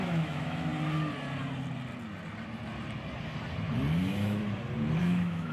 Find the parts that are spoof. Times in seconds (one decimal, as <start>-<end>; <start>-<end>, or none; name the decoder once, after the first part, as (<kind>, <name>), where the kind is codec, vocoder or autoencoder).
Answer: 0.0-0.7 (autoencoder, DAC-VAE); 4.0-4.4; 5.0-5.5